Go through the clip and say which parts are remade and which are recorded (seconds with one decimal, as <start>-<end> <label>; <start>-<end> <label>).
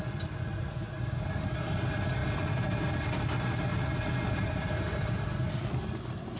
0.0-6.4 recorded